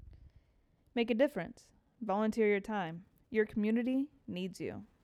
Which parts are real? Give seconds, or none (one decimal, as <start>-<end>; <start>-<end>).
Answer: 0.0-5.0